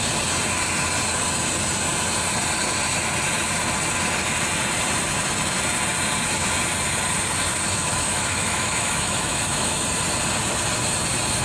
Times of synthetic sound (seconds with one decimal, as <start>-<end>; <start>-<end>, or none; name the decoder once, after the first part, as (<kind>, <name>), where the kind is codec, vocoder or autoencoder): 7.8-9.8 (autoencoder, DAC-VAE)